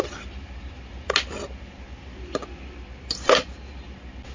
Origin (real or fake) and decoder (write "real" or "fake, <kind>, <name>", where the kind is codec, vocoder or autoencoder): real